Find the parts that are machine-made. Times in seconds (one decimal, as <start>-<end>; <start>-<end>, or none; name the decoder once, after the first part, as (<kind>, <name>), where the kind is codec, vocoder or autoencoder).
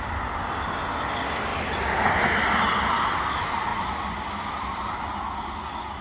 3.7-4.8 (vocoder, BigVGAN v2)